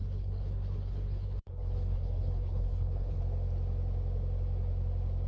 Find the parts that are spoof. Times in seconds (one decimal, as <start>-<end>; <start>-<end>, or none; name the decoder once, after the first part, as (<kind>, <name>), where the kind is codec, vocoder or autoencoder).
0.0-3.2 (codec, HILCodec)